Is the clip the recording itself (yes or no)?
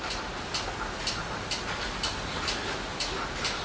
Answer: yes